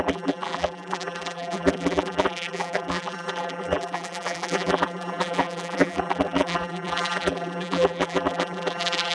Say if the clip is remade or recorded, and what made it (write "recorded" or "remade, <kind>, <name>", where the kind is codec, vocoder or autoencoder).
remade, vocoder, BigVGAN v2